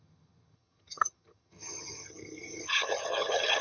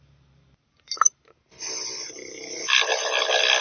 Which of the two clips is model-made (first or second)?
first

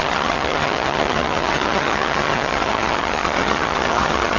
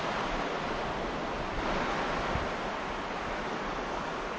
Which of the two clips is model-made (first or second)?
first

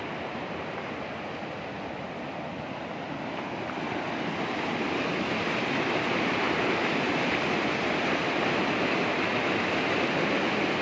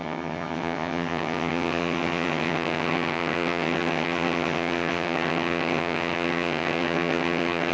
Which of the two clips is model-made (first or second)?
second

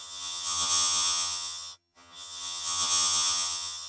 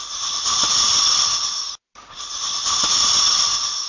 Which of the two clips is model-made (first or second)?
first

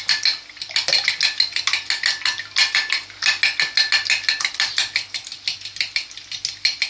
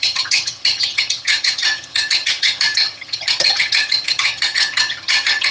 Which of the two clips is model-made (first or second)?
second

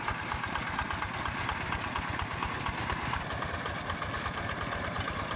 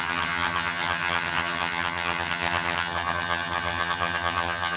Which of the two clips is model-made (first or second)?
second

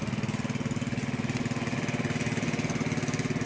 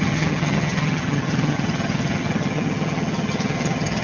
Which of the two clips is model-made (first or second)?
second